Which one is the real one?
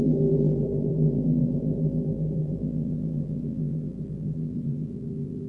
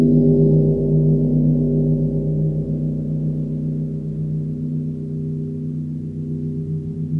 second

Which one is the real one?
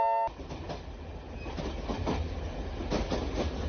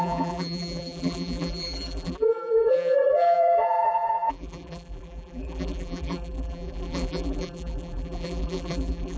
first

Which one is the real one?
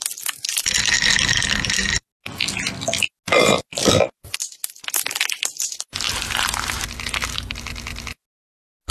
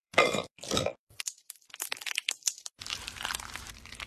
first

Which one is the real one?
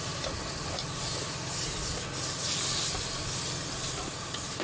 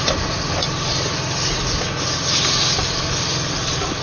second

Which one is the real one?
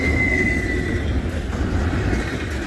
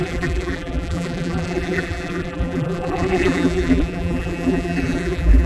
first